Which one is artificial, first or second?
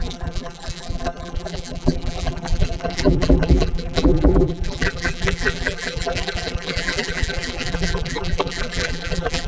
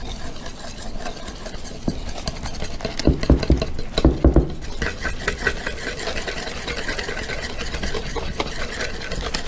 first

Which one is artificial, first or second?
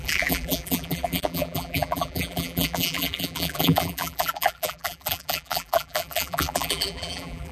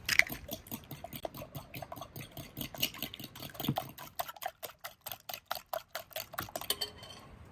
first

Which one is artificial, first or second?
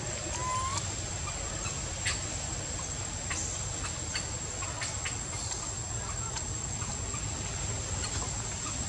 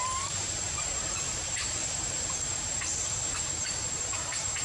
second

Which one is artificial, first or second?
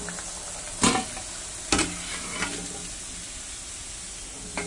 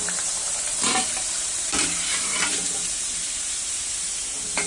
second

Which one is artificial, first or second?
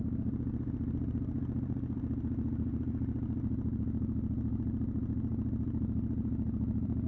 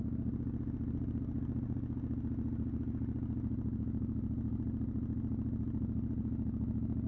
first